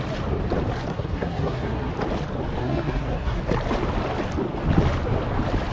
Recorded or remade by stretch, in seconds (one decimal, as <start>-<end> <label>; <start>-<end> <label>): 0.0-0.9 recorded; 0.9-1.9 remade; 1.9-2.6 recorded; 2.6-3.4 remade; 3.4-5.7 recorded